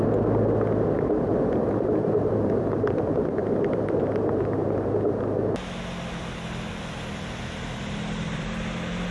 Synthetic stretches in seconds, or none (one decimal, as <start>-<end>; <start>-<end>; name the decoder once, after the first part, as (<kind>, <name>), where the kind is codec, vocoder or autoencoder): 1.3-3.0 (vocoder, BigVGAN v2); 3.4-4.0